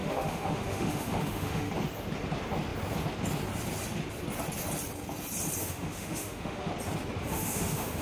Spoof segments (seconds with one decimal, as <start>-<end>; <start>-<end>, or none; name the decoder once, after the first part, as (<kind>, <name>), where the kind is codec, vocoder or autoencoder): 0.0-1.7 (autoencoder, DAC-VAE); 5.6-6.7; 7.3-8.0

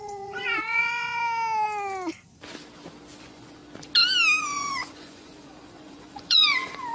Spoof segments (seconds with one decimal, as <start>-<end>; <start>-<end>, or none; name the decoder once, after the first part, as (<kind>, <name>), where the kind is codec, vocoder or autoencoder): 0.0-1.2 (vocoder, Vocos); 3.2-3.6; 4.4-6.9

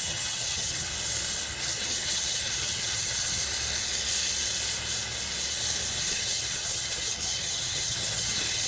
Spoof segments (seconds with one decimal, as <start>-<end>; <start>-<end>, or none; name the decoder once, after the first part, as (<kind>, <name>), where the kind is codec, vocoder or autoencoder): 0.0-0.9 (vocoder, HiFi-GAN); 1.6-3.4; 6.0-8.7

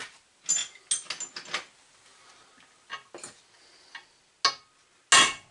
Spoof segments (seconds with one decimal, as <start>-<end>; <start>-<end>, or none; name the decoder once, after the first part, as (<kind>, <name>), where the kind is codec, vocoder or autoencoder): none